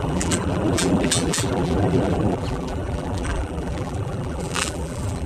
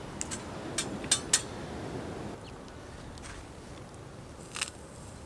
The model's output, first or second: first